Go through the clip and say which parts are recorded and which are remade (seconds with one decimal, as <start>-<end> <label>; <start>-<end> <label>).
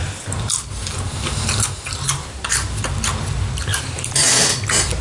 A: 0.0-3.0 remade; 3.0-3.7 recorded; 3.7-4.3 remade; 4.3-5.0 recorded